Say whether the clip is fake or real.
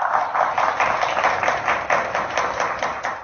real